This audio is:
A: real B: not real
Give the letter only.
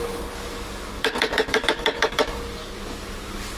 B